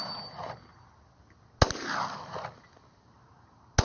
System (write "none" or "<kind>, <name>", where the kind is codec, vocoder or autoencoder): none